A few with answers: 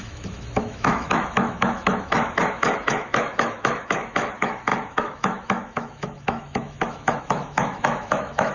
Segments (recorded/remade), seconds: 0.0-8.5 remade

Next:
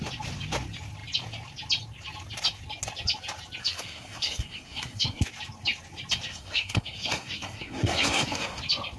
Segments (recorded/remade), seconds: 0.0-3.6 recorded; 3.6-5.2 remade; 5.2-6.3 recorded; 6.3-8.6 remade; 8.6-9.0 recorded

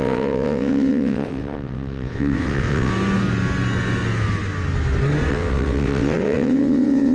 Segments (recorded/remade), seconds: 0.0-2.9 remade; 2.9-5.3 recorded; 5.3-7.1 remade

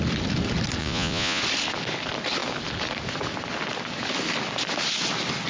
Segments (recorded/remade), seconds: 0.0-0.8 recorded; 0.8-1.4 remade; 1.4-5.5 recorded